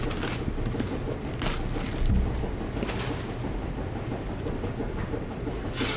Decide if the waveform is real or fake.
real